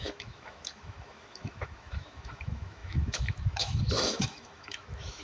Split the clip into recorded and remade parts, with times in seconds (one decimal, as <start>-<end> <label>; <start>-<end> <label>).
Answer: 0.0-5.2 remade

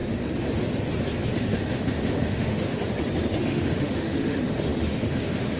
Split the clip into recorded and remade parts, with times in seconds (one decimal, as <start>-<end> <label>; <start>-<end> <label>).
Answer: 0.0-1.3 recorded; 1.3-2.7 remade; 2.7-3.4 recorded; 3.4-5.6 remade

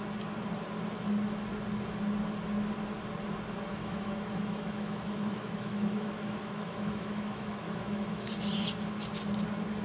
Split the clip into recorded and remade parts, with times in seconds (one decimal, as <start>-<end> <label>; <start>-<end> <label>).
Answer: 0.0-3.7 recorded; 3.7-8.3 remade; 8.3-9.8 recorded

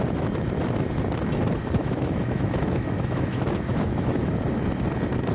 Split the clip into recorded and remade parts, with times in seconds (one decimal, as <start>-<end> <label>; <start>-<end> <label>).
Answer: 0.0-1.8 recorded; 1.8-4.3 remade; 4.3-5.3 recorded

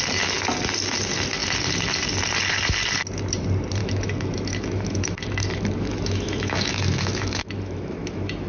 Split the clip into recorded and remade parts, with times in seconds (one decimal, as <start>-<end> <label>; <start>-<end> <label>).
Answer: 0.0-3.8 recorded; 3.8-8.5 remade

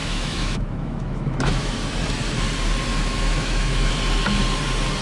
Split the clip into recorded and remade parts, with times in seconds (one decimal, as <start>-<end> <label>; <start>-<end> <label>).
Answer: 0.0-1.7 remade; 1.7-2.9 recorded; 2.9-3.9 remade; 3.9-5.0 recorded

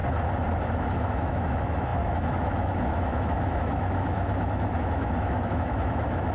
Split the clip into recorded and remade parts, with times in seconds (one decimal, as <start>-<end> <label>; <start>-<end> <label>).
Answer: 0.0-0.6 recorded; 0.6-6.3 remade